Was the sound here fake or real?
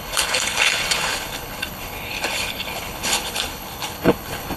fake